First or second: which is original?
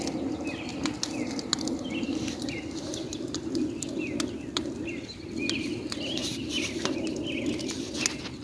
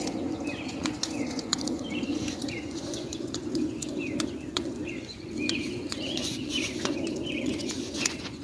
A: first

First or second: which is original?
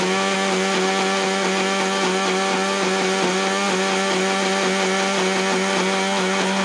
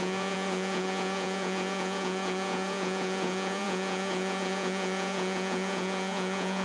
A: first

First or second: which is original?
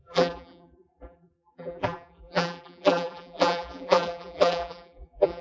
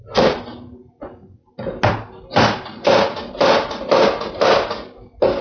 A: second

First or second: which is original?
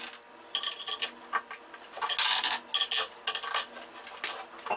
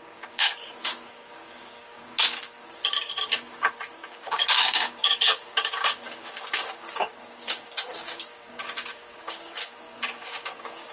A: first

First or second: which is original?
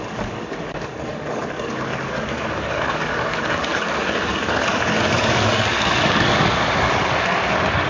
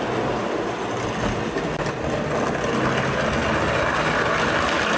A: second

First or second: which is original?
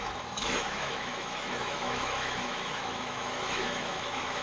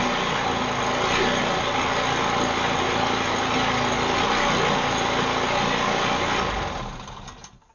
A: second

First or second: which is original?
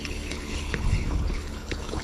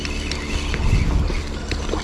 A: second